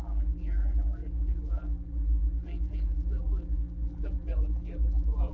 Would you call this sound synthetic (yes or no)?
yes